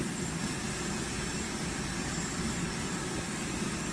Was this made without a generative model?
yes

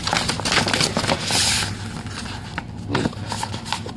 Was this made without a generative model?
yes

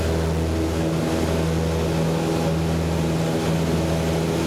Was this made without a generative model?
yes